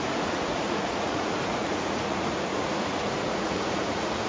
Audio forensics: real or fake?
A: fake